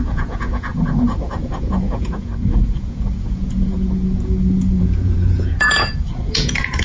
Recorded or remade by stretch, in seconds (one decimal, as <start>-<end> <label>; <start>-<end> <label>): 0.0-6.8 remade